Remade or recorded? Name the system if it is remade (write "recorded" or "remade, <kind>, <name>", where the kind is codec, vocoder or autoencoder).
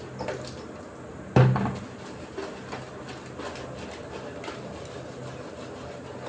recorded